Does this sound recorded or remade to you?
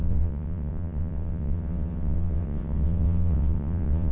remade